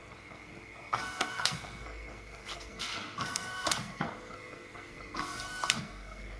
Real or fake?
fake